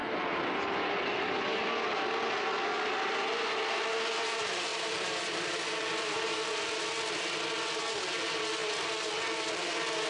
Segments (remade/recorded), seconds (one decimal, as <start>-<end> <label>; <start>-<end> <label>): 0.0-4.7 recorded; 4.7-6.2 remade; 6.2-10.1 recorded